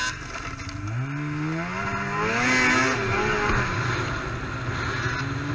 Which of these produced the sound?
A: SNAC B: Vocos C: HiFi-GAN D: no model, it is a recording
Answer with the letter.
D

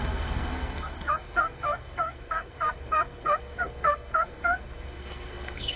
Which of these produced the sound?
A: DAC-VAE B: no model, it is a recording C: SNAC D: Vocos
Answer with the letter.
C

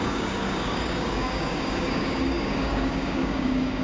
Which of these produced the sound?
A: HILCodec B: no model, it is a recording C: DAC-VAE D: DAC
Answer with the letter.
D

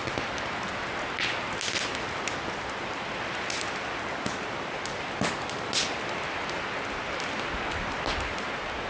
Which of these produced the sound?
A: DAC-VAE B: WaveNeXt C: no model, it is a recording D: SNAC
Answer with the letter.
C